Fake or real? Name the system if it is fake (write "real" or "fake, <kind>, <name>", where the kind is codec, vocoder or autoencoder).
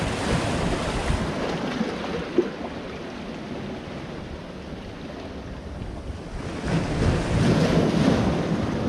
real